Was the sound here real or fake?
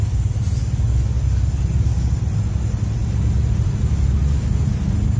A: real